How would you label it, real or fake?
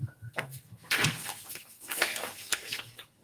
fake